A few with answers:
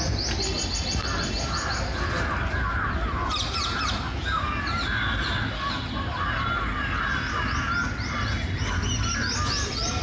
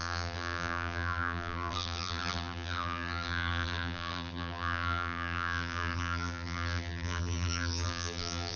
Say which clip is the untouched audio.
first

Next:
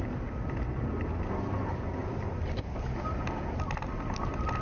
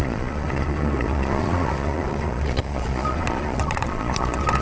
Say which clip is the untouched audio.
first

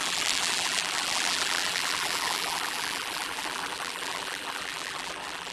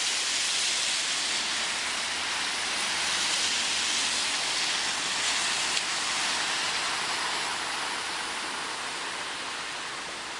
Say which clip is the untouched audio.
second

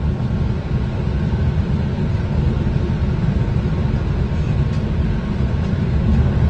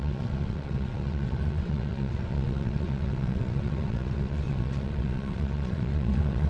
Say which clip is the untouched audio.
first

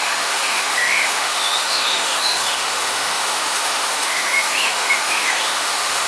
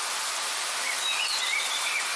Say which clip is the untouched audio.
second